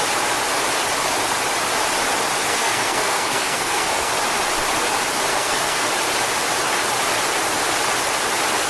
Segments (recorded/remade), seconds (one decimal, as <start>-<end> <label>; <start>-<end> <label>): 0.0-2.5 recorded; 2.5-4.1 remade; 4.1-5.3 recorded; 5.3-5.9 remade; 5.9-8.7 recorded